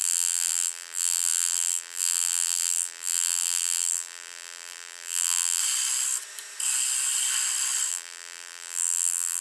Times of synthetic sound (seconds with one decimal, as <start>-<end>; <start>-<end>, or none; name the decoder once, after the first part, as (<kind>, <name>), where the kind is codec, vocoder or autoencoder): 0.0-5.6 (vocoder, BigVGAN v2); 7.9-9.4